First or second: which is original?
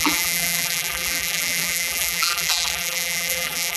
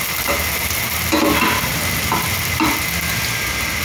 second